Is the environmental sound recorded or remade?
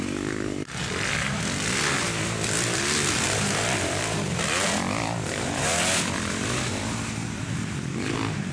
remade